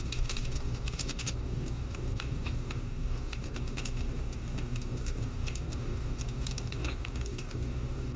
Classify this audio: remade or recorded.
remade